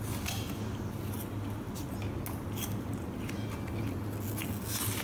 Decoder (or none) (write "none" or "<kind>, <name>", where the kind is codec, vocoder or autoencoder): none